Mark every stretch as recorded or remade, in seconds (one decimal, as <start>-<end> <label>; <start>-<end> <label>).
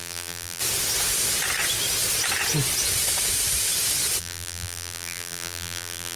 0.0-0.6 remade; 0.6-4.2 recorded; 4.2-6.2 remade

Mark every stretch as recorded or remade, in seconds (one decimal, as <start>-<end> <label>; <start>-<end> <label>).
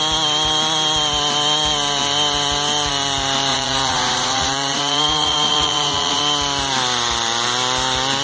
0.0-3.5 recorded; 3.5-6.2 remade; 6.2-8.2 recorded